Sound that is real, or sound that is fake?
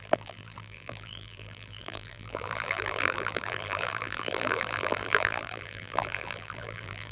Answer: fake